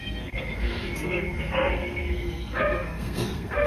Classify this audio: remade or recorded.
remade